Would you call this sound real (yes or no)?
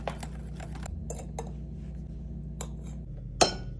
yes